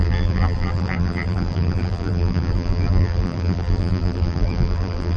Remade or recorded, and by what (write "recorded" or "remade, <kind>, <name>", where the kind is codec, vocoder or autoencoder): remade, vocoder, BigVGAN v2